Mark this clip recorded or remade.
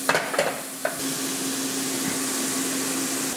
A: recorded